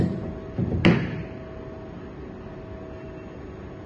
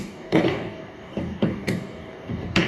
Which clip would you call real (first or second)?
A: first